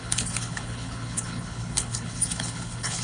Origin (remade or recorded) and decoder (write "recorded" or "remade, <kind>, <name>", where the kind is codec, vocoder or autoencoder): remade, codec, HILCodec